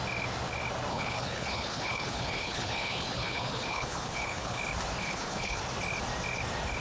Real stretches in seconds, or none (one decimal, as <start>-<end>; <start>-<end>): 0.0-0.9; 4.6-5.0; 5.6-6.8